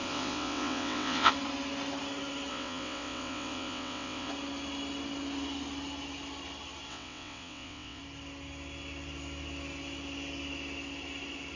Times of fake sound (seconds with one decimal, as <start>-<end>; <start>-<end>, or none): 0.0-1.3; 2.5-4.3; 6.9-8.0